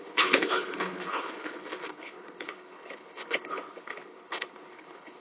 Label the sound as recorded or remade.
remade